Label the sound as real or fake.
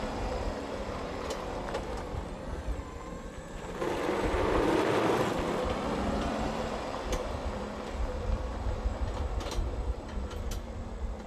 fake